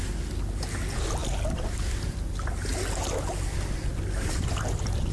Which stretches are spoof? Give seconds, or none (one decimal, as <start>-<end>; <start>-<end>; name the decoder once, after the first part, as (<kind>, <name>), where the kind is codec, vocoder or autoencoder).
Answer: none